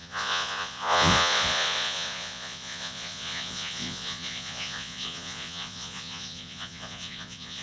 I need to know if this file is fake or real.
fake